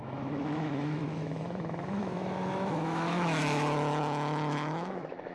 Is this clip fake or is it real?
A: fake